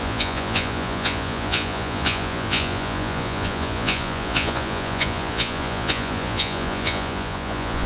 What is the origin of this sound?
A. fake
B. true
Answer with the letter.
A